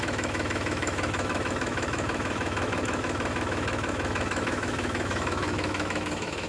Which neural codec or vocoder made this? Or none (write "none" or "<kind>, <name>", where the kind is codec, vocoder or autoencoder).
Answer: autoencoder, DAC-VAE